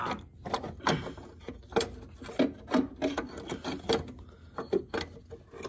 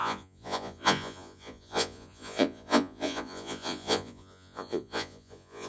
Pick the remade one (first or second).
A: second